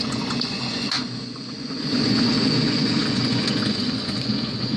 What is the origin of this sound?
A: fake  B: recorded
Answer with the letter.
A